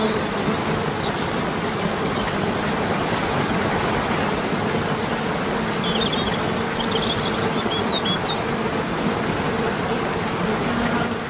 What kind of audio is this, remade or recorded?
recorded